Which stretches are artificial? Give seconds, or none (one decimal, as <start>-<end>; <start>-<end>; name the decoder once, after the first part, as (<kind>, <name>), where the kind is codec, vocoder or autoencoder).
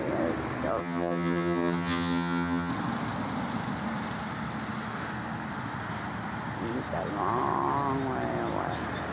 0.8-2.7 (vocoder, HiFi-GAN)